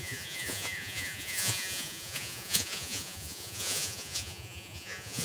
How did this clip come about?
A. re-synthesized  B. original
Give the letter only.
A